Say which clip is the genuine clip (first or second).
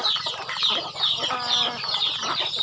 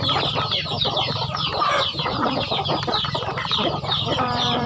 first